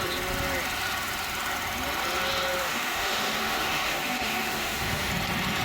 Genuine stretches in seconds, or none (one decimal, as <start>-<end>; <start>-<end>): 0.0-2.6; 5.1-5.6